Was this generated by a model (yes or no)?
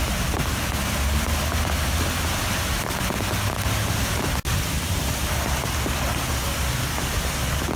no